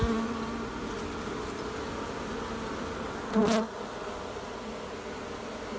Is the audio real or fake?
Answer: real